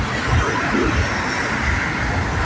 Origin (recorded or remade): recorded